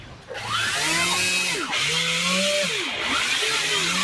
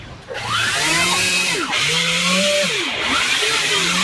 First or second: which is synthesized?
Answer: second